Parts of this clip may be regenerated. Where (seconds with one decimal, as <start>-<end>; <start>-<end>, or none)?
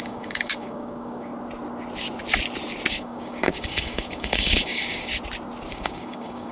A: 0.0-1.3; 2.9-5.1; 5.7-6.5